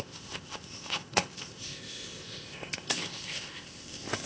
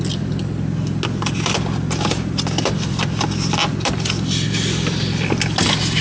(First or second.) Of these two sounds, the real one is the second